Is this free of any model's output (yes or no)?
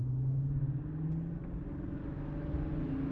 yes